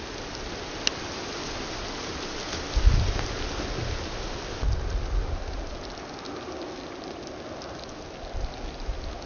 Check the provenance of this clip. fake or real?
real